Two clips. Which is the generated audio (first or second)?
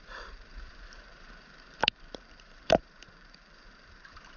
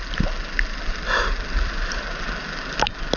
first